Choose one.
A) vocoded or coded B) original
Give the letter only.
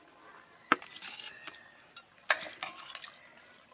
B